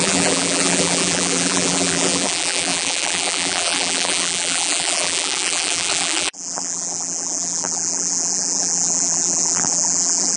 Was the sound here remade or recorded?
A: remade